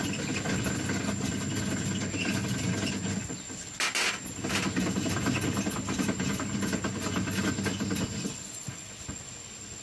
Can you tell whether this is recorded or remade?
recorded